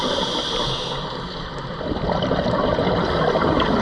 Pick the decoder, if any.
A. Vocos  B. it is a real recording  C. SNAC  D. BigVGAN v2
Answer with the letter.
B